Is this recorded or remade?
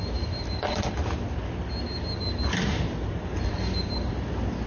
recorded